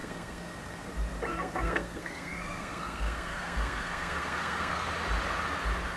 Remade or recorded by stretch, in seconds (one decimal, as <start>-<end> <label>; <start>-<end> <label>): 0.0-0.9 remade; 0.9-1.3 recorded; 1.3-4.9 remade; 4.9-6.0 recorded